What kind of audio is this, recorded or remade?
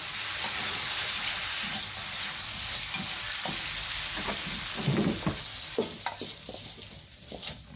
recorded